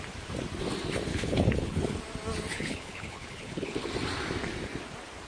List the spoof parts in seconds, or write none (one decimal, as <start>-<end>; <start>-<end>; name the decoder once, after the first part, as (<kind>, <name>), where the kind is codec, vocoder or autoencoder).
1.1-2.0 (codec, HILCodec); 2.5-3.9